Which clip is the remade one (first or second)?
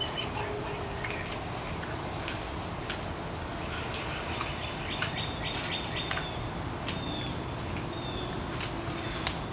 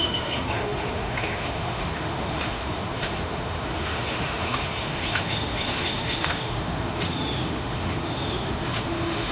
second